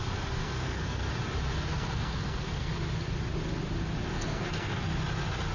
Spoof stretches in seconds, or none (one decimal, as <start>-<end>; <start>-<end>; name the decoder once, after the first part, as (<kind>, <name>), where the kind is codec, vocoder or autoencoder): 0.4-1.1 (codec, SNAC); 1.7-2.7; 4.1-4.8